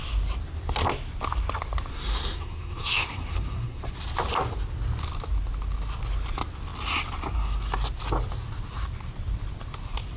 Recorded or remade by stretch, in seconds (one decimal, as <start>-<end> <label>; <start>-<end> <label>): 0.0-1.9 recorded; 1.9-3.8 remade; 3.8-10.2 recorded